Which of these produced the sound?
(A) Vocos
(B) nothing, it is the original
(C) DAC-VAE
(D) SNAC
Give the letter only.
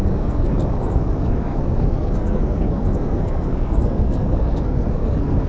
D